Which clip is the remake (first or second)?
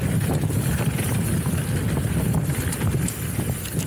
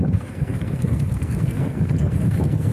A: second